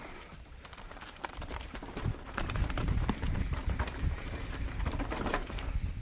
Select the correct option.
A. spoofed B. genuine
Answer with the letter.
A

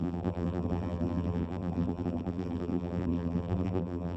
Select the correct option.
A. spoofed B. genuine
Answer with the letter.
A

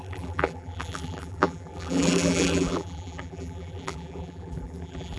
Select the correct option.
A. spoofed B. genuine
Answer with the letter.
A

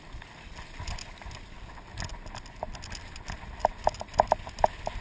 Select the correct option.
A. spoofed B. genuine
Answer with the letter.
B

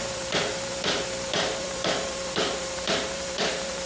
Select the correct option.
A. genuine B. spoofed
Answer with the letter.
B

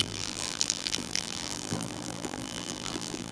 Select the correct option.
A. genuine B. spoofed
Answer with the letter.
B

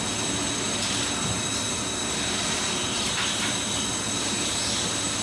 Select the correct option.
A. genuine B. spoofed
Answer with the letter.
B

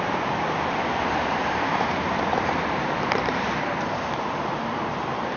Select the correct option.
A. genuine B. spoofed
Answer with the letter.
B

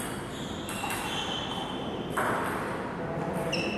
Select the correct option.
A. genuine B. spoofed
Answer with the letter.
A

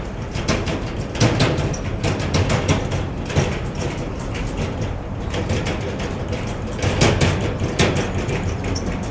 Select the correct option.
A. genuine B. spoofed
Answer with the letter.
A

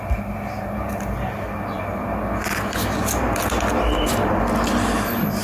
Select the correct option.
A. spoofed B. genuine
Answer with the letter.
B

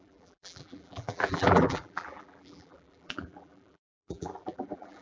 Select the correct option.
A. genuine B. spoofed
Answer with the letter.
B